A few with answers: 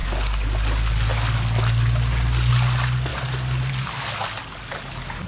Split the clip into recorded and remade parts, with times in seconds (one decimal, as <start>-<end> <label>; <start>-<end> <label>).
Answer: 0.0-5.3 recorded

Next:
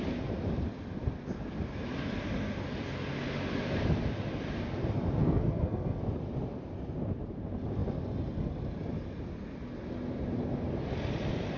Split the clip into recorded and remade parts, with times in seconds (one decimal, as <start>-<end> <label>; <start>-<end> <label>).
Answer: 0.0-5.2 recorded; 5.2-6.0 remade; 6.0-11.6 recorded

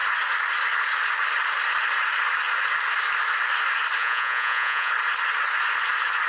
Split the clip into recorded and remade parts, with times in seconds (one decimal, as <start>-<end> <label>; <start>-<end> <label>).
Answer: 0.0-4.0 recorded; 4.0-4.9 remade; 4.9-6.3 recorded

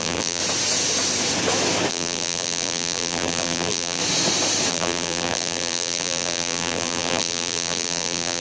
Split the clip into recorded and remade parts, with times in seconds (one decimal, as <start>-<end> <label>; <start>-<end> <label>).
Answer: 0.0-0.4 remade; 0.4-1.9 recorded; 1.9-4.0 remade; 4.0-4.7 recorded; 4.7-8.4 remade

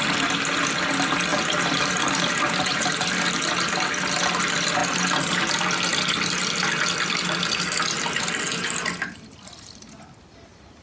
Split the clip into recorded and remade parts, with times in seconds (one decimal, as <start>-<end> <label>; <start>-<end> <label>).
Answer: 0.0-1.3 recorded; 1.3-3.1 remade; 3.1-4.8 recorded; 4.8-5.5 remade; 5.5-10.8 recorded

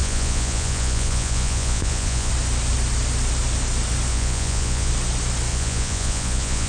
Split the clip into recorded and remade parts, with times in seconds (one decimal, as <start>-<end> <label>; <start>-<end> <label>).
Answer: 0.0-2.3 remade; 2.3-4.1 recorded; 4.1-4.9 remade; 4.9-5.5 recorded; 5.5-6.7 remade